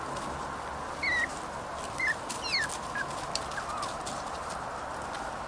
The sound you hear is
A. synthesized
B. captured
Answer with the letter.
B